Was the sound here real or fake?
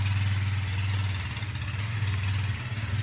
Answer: real